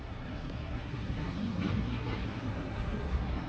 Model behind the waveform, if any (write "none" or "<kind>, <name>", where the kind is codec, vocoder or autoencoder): codec, SNAC